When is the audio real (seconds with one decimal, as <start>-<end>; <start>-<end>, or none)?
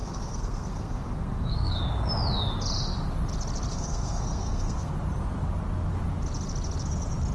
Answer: 1.8-3.7; 4.9-7.3